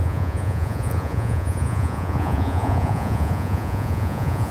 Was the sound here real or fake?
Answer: fake